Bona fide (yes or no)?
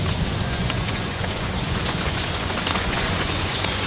no